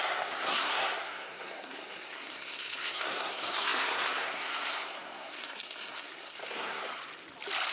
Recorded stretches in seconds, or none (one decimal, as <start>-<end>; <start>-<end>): 7.0-7.7